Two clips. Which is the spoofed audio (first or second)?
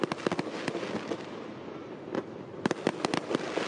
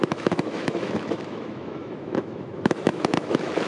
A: second